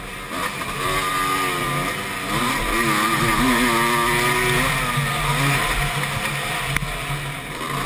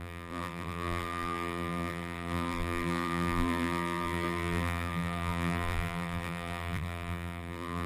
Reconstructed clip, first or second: second